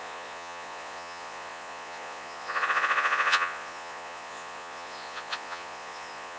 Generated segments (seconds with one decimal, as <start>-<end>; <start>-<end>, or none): 0.0-6.4